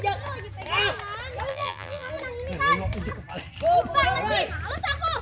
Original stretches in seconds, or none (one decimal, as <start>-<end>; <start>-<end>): 0.0-1.5; 2.1-5.2